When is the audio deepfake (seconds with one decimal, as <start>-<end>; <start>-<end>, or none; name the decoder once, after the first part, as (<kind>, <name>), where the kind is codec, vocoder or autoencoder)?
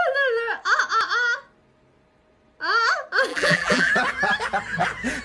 3.3-3.9 (vocoder, BigVGAN v2)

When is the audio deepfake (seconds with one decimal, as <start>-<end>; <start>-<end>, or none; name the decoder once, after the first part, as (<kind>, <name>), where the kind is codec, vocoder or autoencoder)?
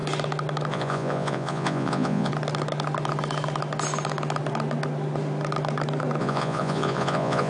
0.7-2.3 (vocoder, Vocos); 6.2-7.5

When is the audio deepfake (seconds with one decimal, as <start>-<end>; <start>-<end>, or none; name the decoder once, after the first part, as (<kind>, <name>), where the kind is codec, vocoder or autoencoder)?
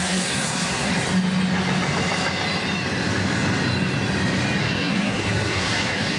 0.0-0.9 (codec, SNAC); 4.6-6.2